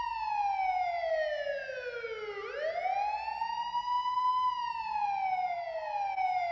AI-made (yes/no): no